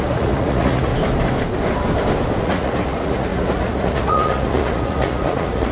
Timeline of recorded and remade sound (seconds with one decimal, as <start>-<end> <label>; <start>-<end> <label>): 0.0-0.9 remade; 0.9-2.4 recorded; 2.4-5.7 remade